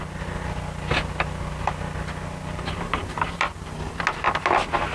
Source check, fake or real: real